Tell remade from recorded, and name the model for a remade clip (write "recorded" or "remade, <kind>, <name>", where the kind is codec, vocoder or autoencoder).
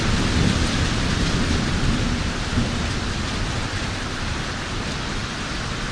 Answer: recorded